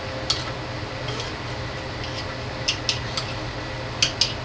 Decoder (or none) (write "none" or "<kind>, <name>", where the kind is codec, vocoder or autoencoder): none